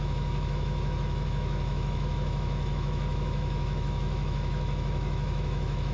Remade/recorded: remade